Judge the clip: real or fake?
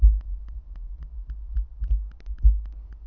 real